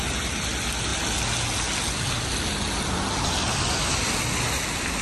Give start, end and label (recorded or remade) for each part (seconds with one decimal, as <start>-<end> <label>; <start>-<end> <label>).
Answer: 0.0-5.0 recorded